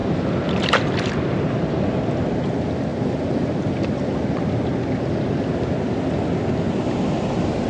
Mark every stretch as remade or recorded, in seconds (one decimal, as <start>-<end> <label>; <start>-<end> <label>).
0.0-7.7 recorded